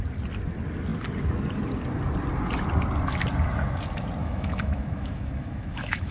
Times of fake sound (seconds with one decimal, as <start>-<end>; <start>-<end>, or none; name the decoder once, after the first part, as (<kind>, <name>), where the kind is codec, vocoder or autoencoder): 4.2-6.1 (autoencoder, DAC-VAE)

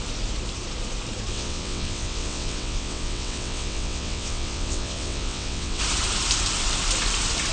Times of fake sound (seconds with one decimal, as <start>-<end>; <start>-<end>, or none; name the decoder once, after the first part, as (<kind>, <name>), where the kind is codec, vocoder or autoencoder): 1.3-5.8 (vocoder, WaveNeXt)

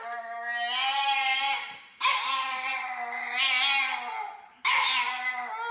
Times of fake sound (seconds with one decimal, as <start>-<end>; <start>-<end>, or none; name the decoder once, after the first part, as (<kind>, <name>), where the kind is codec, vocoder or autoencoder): 2.7-3.4 (vocoder, BigVGAN v2)

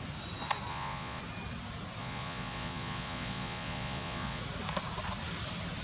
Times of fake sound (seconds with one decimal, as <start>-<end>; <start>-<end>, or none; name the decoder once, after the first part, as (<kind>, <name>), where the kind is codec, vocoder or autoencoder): 0.7-1.2 (vocoder, Vocos); 2.0-4.4

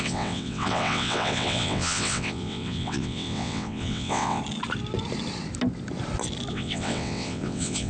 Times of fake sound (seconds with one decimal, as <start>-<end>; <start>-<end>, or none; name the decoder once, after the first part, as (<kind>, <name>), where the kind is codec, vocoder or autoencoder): 0.0-4.4 (vocoder, WaveNeXt); 6.5-7.9

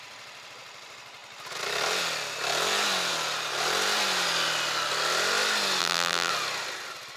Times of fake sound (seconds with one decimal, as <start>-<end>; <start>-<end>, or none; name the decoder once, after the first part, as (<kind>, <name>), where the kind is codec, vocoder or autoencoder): 5.8-6.3 (vocoder, BigVGAN v2)